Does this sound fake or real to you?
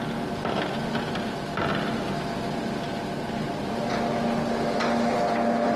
real